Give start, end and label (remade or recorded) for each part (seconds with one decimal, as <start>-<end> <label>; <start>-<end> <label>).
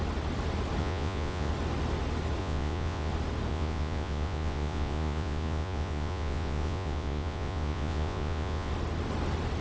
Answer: 0.0-0.8 recorded; 0.8-1.5 remade; 1.5-2.4 recorded; 2.4-3.1 remade; 3.1-3.5 recorded; 3.5-8.7 remade; 8.7-9.6 recorded